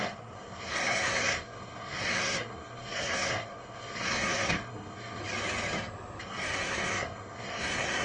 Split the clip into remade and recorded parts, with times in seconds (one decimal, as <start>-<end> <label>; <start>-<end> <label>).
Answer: 0.0-5.2 remade; 5.2-6.2 recorded; 6.2-8.0 remade